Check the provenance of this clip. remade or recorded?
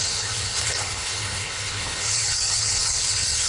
remade